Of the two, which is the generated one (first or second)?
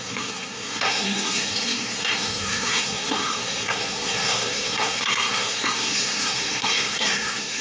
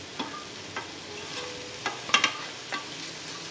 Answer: first